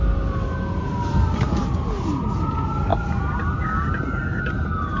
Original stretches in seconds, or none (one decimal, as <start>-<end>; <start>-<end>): 0.0-5.0